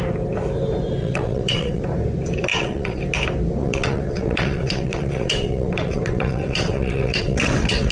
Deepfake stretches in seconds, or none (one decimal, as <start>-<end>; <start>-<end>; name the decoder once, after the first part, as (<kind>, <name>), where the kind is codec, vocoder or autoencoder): 1.0-1.8 (vocoder, WaveNeXt); 2.5-3.0; 3.6-7.9